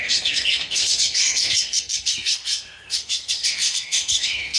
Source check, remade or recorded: remade